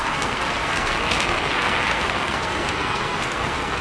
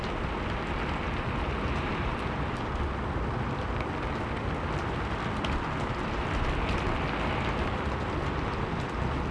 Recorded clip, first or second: second